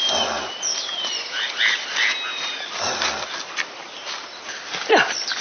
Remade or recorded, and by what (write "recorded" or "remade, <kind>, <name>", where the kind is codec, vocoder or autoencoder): recorded